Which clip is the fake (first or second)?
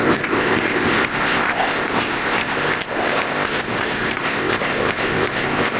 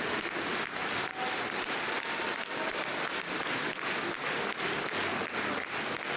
first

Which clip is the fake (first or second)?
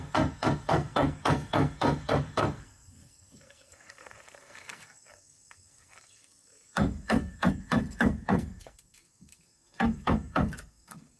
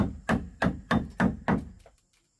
first